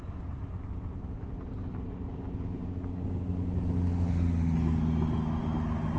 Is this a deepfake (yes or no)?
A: no